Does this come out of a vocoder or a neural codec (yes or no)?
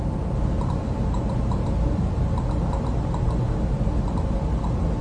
no